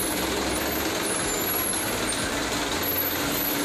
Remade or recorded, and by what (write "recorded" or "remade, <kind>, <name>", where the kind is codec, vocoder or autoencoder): recorded